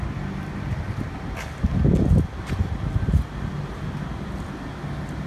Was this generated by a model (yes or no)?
no